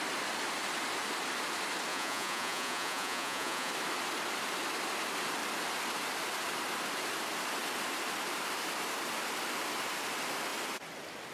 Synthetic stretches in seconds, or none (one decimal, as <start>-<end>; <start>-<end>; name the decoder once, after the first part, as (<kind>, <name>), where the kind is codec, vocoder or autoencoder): 1.9-3.7 (vocoder, Vocos)